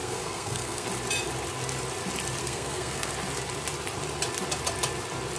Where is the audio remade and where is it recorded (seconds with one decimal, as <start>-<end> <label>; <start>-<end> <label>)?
0.0-0.9 remade; 0.9-2.4 recorded; 2.4-3.1 remade; 3.1-5.4 recorded